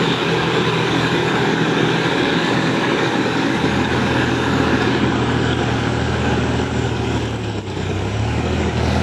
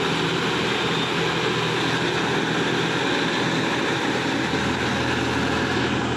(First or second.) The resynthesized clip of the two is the first